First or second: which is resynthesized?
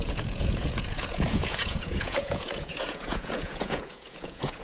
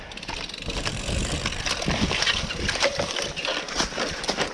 first